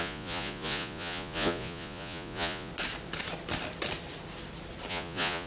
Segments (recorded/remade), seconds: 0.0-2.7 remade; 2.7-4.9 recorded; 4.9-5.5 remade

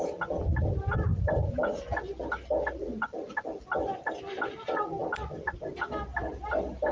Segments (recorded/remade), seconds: 0.0-1.1 recorded; 1.1-1.8 remade; 1.8-2.8 recorded; 2.8-3.6 remade; 3.6-6.9 recorded

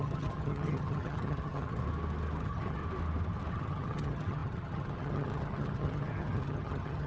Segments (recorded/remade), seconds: 0.0-1.8 remade; 1.8-2.4 recorded; 2.4-2.8 remade; 2.8-3.5 recorded; 3.5-7.1 remade

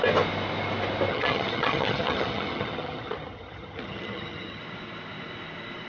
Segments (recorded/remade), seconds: 0.0-1.1 recorded; 1.1-4.6 remade; 4.6-5.9 recorded